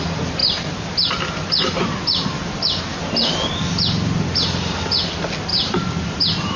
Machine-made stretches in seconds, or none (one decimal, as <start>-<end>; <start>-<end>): none